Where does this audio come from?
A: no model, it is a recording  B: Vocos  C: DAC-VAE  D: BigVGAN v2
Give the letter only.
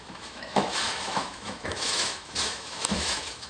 C